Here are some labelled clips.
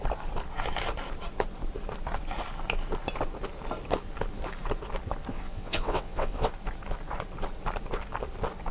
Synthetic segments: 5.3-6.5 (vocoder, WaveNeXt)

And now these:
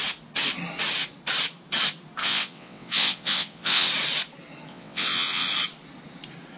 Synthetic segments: 2.2-3.9 (vocoder, WaveNeXt); 4.7-5.5

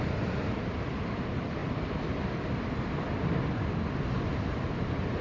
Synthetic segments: none